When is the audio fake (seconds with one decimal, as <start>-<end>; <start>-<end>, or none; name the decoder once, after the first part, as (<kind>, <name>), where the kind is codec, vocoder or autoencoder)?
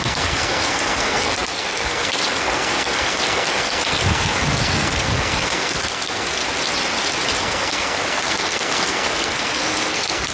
0.0-6.4 (codec, SNAC); 7.4-10.3